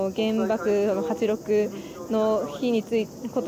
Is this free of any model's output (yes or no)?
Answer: yes